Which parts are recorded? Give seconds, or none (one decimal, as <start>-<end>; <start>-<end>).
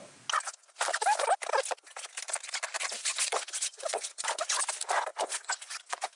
0.0-3.1; 4.6-5.1